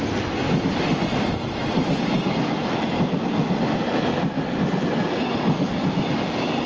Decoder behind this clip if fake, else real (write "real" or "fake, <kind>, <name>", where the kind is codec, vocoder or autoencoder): real